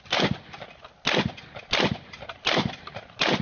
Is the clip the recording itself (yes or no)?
yes